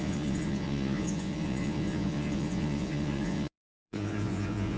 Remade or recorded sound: remade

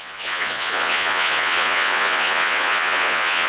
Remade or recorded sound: remade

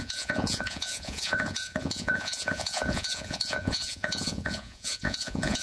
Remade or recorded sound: remade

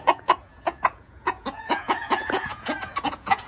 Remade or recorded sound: remade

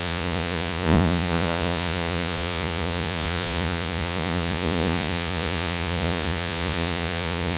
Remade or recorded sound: remade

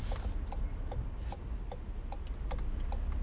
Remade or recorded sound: recorded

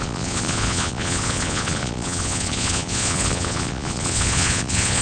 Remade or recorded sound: remade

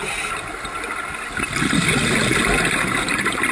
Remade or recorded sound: recorded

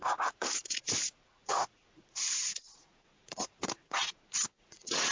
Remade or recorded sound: remade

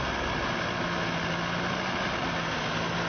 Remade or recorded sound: recorded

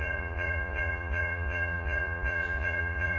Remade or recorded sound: remade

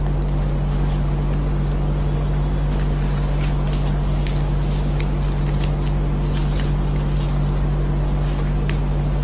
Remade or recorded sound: recorded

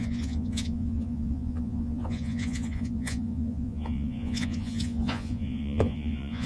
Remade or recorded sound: remade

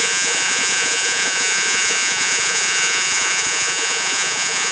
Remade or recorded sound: remade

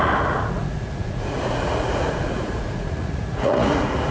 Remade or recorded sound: remade